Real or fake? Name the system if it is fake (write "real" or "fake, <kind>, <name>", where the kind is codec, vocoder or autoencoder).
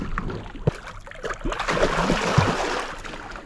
real